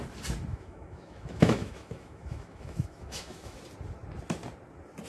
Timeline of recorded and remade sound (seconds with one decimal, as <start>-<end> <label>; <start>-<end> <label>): 0.0-0.5 recorded; 0.5-3.6 remade; 3.6-5.1 recorded